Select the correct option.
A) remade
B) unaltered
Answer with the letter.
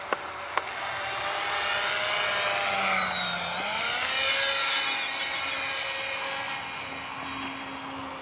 B